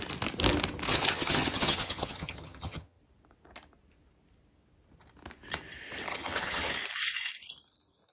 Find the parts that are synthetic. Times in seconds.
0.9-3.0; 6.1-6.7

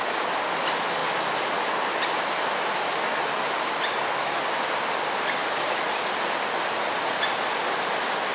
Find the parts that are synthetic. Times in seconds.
none

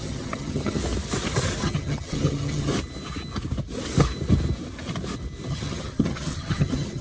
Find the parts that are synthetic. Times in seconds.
0.0-0.8; 1.6-2.7; 5.5-7.0

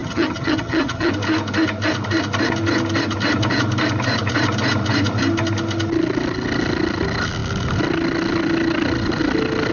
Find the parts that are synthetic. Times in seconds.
0.0-1.1

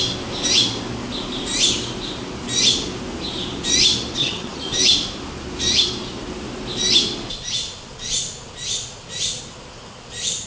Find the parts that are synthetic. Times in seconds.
4.2-4.8

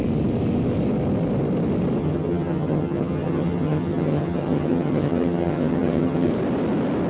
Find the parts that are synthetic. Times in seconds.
2.0-6.3

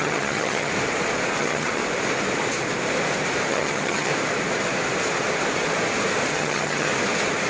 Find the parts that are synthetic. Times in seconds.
0.0-0.7; 1.4-1.8; 3.5-4.1; 6.3-6.9